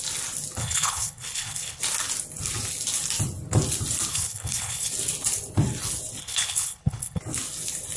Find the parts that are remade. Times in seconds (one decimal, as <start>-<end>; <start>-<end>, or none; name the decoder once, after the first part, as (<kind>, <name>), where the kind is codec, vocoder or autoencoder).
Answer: 0.6-1.8 (codec, HILCodec); 4.1-4.9; 6.2-7.2